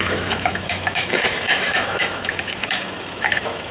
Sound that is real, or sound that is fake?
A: fake